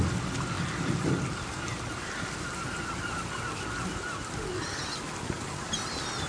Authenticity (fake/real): real